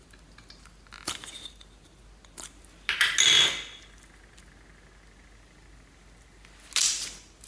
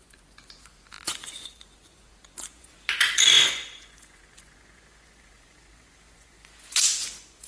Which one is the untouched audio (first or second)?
first